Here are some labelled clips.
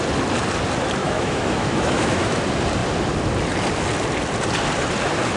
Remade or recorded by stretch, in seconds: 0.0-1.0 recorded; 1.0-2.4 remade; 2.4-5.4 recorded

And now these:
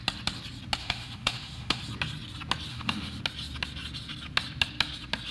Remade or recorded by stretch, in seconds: 0.0-0.8 recorded; 0.8-1.8 remade; 1.8-2.7 recorded; 2.7-3.2 remade; 3.2-5.3 recorded

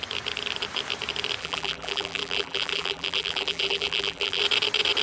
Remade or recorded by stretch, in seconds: 0.0-1.4 recorded; 1.4-4.4 remade; 4.4-5.0 recorded

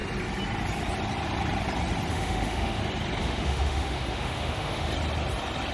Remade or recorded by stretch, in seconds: 0.0-2.1 recorded; 2.1-2.8 remade; 2.8-3.2 recorded; 3.2-4.9 remade; 4.9-5.7 recorded

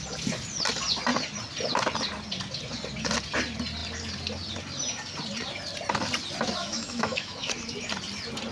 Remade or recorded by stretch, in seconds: 0.0-6.6 recorded; 6.6-7.5 remade; 7.5-8.5 recorded